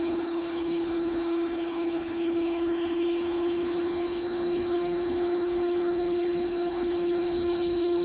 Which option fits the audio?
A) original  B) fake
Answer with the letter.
B